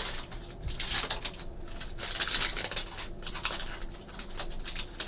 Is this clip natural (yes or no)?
yes